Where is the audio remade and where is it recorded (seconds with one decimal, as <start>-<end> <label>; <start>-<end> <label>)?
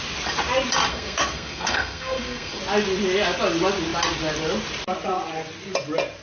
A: 0.0-0.9 recorded; 0.9-2.6 remade; 2.6-6.2 recorded